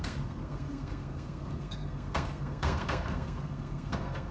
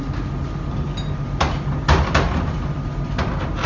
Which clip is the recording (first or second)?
second